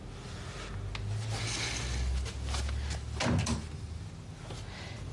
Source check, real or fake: real